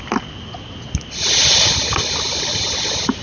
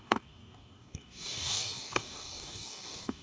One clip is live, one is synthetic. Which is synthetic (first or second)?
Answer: second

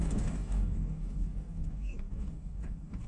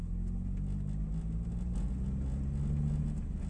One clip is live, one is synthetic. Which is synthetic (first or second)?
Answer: first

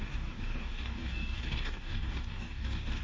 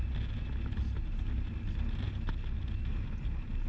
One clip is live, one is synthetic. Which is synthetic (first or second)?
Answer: first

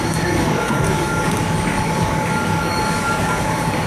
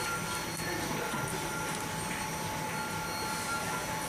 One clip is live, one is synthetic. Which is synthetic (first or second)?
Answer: first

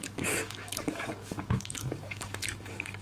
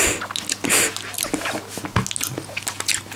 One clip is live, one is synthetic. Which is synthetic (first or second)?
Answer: first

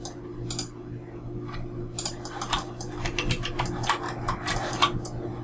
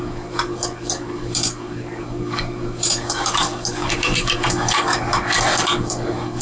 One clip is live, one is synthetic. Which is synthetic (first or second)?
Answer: second